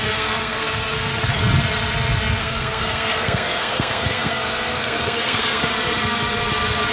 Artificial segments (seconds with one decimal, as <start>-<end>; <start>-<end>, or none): 0.0-1.4; 2.4-5.7